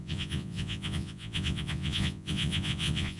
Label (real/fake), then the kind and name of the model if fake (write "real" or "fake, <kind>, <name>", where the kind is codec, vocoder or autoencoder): fake, vocoder, Vocos